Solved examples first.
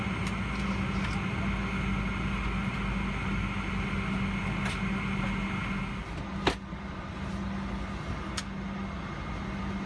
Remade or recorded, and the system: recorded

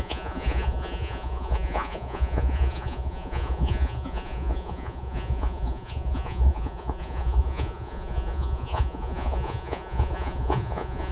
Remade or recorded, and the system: remade, vocoder, Vocos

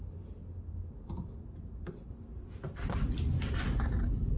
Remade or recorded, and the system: recorded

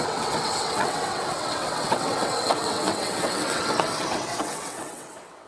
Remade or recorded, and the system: remade, vocoder, WaveNeXt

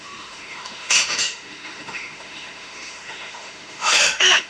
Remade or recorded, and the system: remade, autoencoder, DAC-VAE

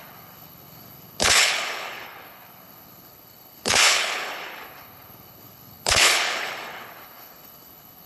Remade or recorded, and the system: remade, codec, HILCodec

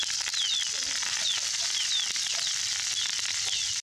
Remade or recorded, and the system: recorded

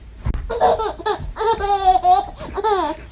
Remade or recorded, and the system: recorded